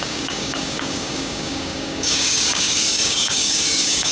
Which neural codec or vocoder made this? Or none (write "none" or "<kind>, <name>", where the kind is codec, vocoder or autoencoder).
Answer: codec, DAC